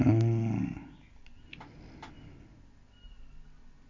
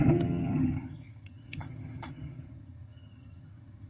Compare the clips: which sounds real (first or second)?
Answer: first